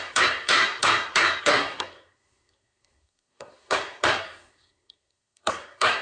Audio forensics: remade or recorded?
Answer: remade